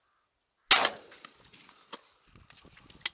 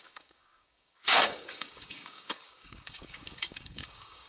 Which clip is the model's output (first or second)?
second